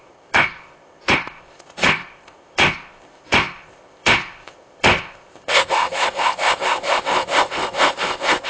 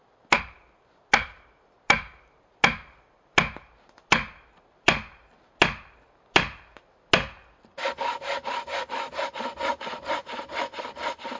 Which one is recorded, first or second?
second